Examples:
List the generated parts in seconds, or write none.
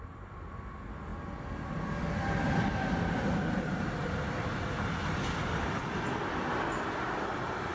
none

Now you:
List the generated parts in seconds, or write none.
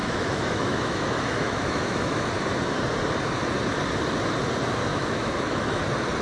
0.0-2.3; 4.9-5.8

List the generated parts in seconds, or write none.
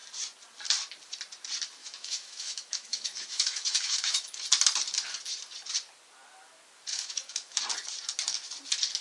1.8-4.4; 6.9-7.6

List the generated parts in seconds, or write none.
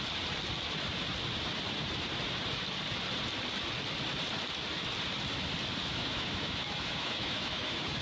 5.8-8.0